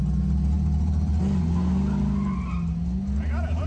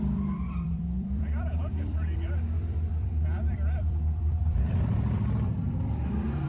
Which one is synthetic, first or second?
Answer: second